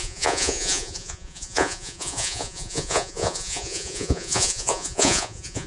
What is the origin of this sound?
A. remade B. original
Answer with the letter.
A